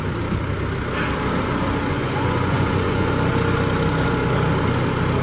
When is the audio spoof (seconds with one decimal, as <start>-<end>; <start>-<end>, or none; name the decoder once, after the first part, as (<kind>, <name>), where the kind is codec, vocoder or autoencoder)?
1.9-3.1 (vocoder, Vocos)

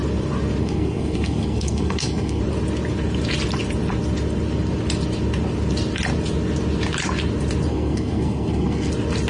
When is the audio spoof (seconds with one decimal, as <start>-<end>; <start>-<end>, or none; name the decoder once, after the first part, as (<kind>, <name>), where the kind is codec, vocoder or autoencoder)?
0.6-2.4 (codec, SNAC); 7.7-8.9